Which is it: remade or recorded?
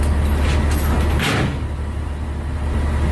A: recorded